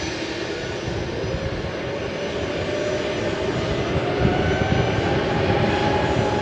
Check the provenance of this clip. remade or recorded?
recorded